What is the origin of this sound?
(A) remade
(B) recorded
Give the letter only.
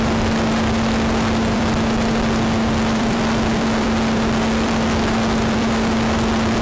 A